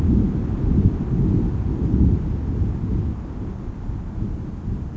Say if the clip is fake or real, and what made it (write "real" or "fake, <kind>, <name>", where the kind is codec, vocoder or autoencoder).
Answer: real